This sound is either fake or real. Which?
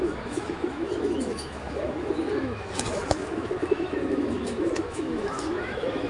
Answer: fake